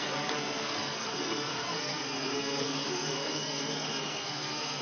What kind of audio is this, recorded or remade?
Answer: remade